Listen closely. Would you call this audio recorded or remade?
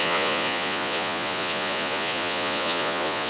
remade